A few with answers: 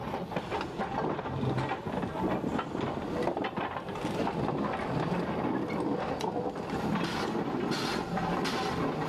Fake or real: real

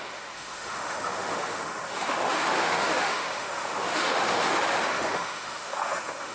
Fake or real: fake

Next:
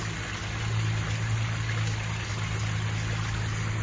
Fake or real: real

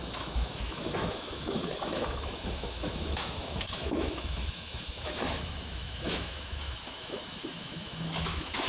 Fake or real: fake